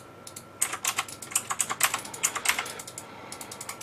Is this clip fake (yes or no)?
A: no